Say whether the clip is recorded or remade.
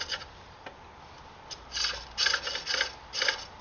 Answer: recorded